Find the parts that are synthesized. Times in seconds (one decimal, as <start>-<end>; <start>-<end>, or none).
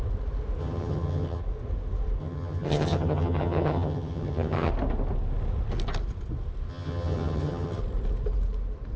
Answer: 0.6-1.4; 2.2-4.7; 6.7-7.8